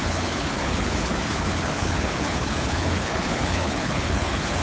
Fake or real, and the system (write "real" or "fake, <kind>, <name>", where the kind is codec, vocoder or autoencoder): fake, codec, HILCodec